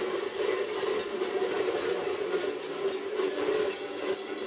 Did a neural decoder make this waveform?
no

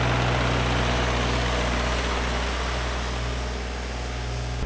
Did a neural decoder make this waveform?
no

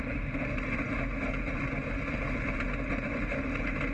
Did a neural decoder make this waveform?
no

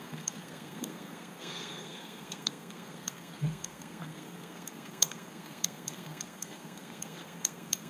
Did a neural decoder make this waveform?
yes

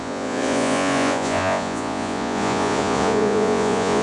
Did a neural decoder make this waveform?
yes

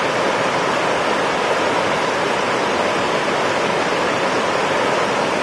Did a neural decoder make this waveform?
no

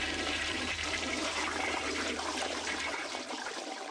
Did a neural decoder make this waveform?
yes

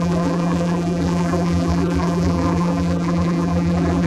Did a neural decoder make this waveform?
yes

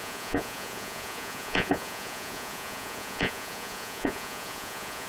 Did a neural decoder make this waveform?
yes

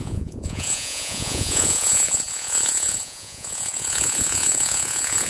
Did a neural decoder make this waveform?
yes